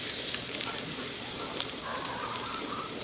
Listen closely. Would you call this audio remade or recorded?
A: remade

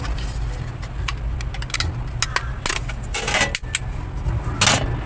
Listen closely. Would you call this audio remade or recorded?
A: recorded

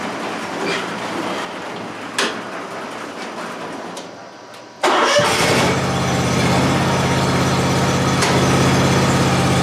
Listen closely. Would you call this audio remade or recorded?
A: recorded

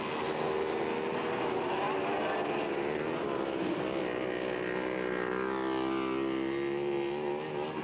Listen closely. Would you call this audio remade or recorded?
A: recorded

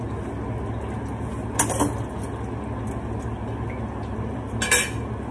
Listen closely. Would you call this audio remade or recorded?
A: recorded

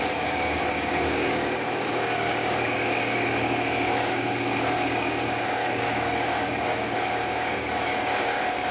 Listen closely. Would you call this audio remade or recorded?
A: remade